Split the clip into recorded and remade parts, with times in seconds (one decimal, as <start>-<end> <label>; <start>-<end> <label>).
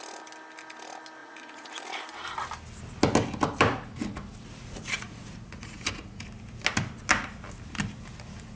0.0-1.2 recorded; 1.2-1.8 remade; 1.8-4.6 recorded; 4.6-6.2 remade; 6.2-8.6 recorded